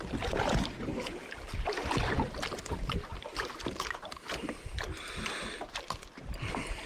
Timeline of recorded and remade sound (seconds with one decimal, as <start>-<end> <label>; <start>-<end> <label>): 0.0-3.1 recorded; 3.1-3.8 remade; 3.8-6.9 recorded